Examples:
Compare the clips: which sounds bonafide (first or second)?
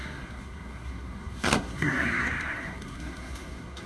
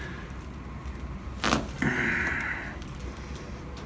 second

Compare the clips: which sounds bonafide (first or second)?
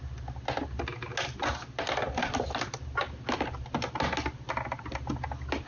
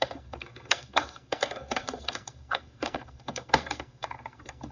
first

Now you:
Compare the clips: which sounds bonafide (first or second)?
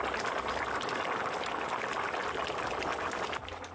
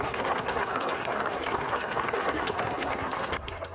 first